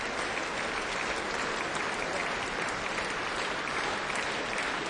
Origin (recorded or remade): recorded